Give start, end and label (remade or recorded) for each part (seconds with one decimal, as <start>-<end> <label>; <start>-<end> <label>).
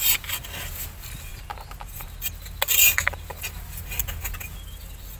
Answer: 0.0-5.2 recorded